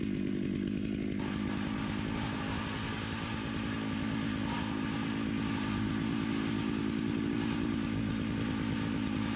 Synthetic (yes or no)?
no